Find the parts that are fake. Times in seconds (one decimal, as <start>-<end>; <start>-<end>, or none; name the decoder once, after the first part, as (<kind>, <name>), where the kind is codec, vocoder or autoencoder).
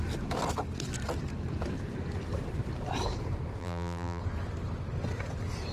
3.6-4.2 (vocoder, BigVGAN v2)